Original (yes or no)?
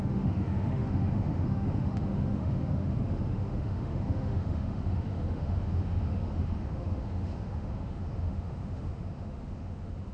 no